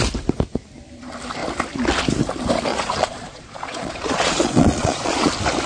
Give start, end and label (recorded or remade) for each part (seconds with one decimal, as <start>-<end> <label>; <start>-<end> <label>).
0.0-2.7 recorded; 2.7-5.3 remade; 5.3-5.7 recorded